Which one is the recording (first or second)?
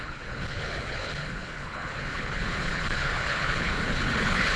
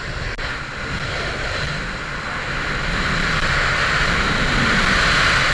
second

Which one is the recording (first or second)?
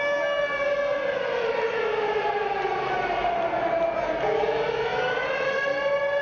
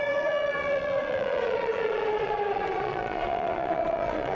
first